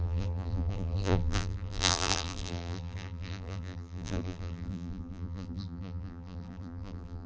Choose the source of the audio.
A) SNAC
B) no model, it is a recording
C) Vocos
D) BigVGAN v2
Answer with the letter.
D